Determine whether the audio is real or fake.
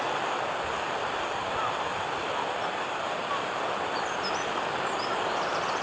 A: real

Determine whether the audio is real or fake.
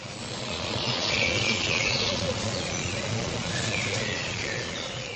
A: fake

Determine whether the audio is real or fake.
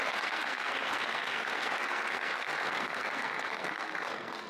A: fake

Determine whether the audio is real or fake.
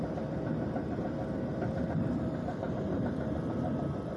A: fake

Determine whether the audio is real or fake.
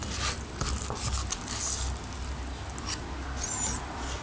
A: real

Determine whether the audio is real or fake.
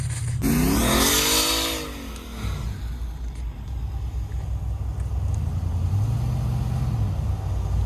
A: real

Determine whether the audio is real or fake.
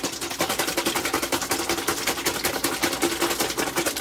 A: real